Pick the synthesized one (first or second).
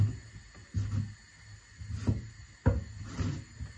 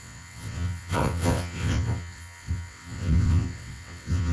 second